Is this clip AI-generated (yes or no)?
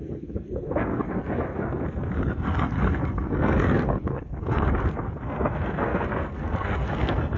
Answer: yes